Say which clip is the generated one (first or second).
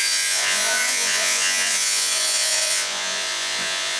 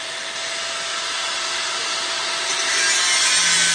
first